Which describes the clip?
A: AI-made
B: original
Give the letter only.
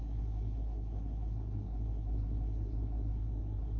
A